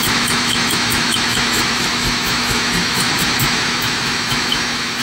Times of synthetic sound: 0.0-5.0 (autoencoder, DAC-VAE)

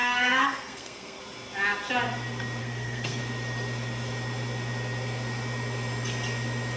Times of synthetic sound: 0.0-1.2 (codec, SNAC); 2.6-3.2

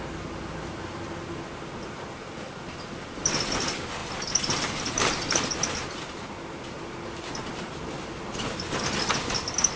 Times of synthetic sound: none

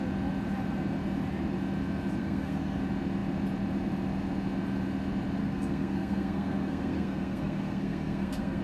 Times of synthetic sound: 2.2-2.8 (codec, SNAC); 5.4-8.6

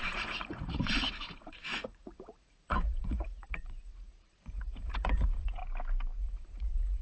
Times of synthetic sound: 0.0-5.6 (vocoder, Vocos); 6.2-7.0